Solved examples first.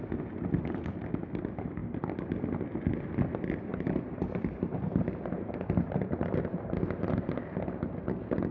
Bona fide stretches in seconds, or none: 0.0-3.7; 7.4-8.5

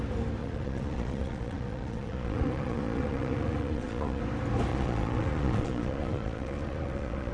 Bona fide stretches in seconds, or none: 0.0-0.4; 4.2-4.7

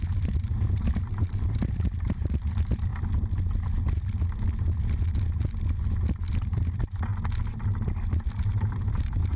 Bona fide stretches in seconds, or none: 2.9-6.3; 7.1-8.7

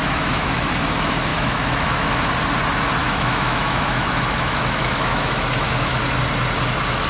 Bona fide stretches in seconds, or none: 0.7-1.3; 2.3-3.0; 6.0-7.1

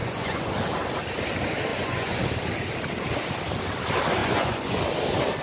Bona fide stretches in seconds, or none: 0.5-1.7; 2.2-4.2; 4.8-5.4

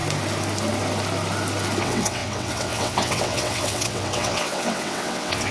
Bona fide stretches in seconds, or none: 0.0-1.8

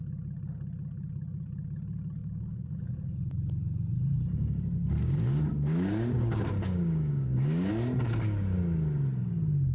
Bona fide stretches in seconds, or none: 0.0-2.2; 2.8-5.0; 7.7-9.7